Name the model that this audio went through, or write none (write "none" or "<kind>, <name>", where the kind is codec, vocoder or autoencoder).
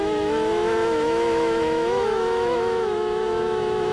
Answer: autoencoder, DAC-VAE